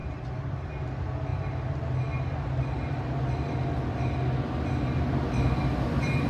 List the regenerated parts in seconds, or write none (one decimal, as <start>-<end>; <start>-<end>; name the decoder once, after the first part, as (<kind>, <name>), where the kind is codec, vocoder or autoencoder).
0.0-0.7 (vocoder, BigVGAN v2)